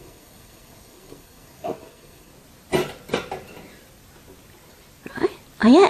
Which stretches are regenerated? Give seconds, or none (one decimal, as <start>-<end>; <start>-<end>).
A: 0.0-2.3